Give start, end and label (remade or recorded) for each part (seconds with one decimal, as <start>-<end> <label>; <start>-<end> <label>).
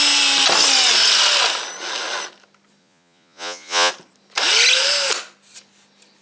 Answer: 0.0-2.8 recorded; 2.8-3.9 remade; 3.9-6.2 recorded